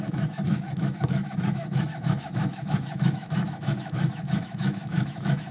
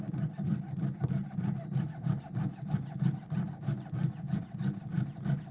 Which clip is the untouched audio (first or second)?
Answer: second